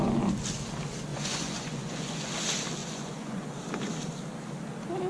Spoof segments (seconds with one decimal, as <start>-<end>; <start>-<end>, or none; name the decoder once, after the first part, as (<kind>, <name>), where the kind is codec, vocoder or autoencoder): 1.1-2.3 (vocoder, Vocos); 2.8-3.5